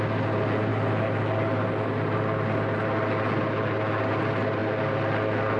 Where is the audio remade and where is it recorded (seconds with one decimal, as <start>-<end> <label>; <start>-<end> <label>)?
0.0-5.6 recorded